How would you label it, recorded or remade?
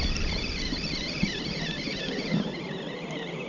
remade